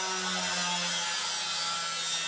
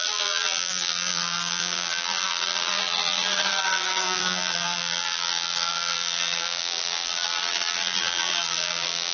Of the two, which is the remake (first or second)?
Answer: second